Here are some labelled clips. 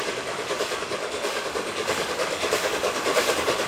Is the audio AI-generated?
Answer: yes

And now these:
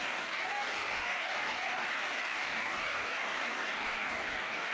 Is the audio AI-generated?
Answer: yes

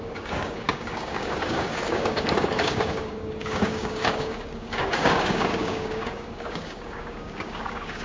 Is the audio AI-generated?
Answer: yes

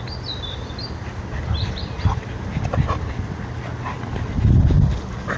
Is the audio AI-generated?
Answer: no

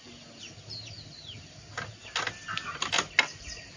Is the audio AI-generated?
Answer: no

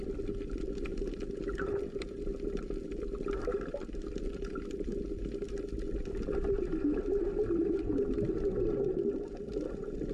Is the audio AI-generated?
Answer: no